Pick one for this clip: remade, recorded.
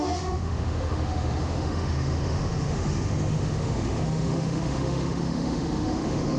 remade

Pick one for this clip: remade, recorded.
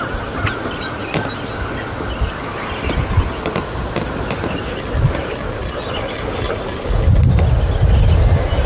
recorded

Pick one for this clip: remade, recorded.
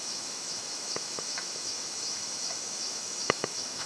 remade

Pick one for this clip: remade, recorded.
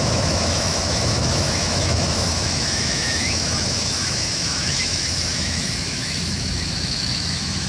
remade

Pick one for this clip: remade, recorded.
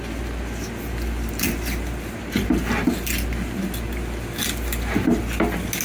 recorded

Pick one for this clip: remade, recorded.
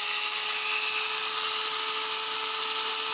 recorded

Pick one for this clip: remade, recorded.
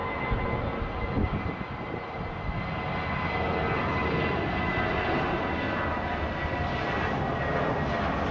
recorded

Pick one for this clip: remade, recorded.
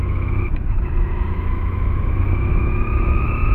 remade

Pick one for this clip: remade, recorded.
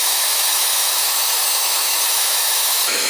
remade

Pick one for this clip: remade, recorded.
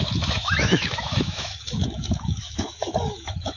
remade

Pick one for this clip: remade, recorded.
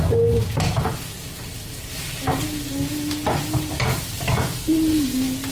recorded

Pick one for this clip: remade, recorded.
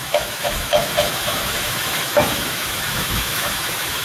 remade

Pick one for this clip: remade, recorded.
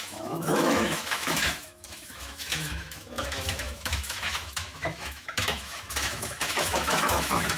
remade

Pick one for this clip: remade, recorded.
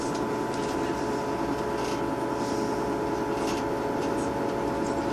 recorded